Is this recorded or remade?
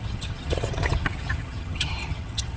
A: remade